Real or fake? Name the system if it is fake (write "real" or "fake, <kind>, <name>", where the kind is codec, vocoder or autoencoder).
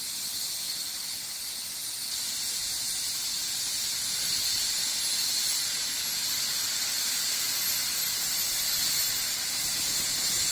real